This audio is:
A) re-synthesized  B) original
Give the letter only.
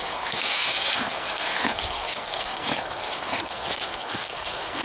A